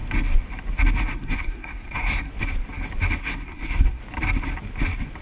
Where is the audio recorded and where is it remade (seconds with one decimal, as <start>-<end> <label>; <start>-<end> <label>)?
0.0-1.1 recorded; 1.1-2.3 remade; 2.3-3.2 recorded; 3.2-4.0 remade; 4.0-5.2 recorded